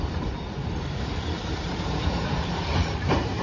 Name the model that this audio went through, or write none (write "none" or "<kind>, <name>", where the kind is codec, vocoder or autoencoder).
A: vocoder, BigVGAN v2